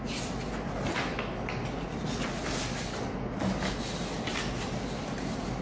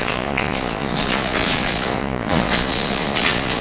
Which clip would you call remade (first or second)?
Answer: second